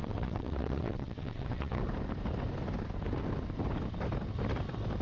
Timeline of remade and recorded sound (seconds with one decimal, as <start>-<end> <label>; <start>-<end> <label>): 0.0-1.8 remade; 1.8-5.0 recorded

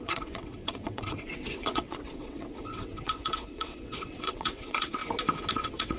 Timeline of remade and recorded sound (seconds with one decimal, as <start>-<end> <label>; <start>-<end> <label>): 0.0-5.0 remade; 5.0-5.5 recorded; 5.5-6.0 remade

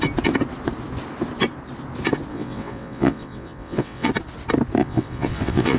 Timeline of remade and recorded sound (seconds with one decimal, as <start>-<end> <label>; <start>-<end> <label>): 0.0-2.3 recorded; 2.3-4.1 remade; 4.1-4.8 recorded; 4.8-5.8 remade

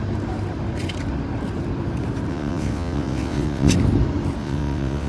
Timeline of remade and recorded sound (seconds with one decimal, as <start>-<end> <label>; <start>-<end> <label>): 0.0-2.3 recorded; 2.3-3.7 remade; 3.7-4.4 recorded; 4.4-5.1 remade

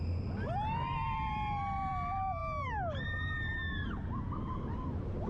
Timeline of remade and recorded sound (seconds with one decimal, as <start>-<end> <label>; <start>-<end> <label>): 0.0-5.3 recorded

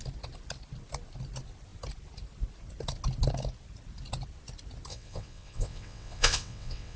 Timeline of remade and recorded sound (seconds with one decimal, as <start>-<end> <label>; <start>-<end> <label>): 0.0-4.9 recorded; 4.9-7.0 remade

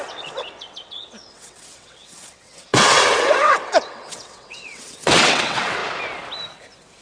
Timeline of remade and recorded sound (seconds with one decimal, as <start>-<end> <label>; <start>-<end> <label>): 0.0-5.8 remade; 5.8-7.0 recorded